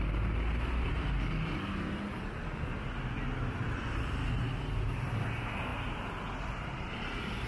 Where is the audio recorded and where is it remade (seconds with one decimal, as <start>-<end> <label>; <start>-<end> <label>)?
0.0-7.5 recorded